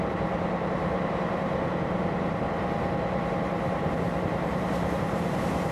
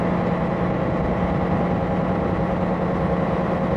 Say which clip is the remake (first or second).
first